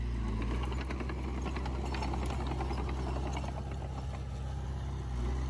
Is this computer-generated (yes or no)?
no